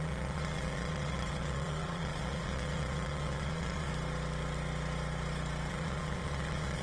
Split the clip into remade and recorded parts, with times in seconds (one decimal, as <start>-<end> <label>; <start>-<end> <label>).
0.0-3.9 remade; 3.9-5.7 recorded; 5.7-6.8 remade